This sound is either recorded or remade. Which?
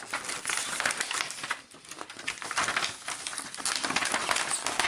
recorded